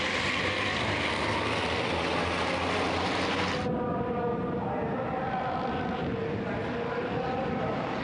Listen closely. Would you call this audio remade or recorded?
recorded